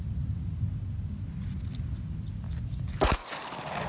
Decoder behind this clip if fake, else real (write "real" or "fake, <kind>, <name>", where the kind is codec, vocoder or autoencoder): real